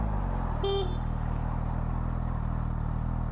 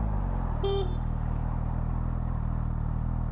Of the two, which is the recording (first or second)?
first